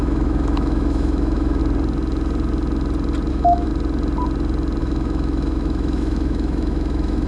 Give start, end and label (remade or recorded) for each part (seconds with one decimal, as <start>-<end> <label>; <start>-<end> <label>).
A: 0.0-1.6 remade; 1.6-3.3 recorded; 3.3-3.7 remade; 3.7-4.8 recorded; 4.8-7.3 remade